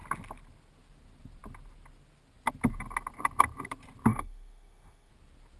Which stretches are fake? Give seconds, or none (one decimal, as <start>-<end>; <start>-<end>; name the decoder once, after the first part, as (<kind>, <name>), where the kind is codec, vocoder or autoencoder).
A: 4.1-5.1 (autoencoder, DAC-VAE)